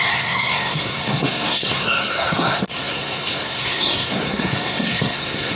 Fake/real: fake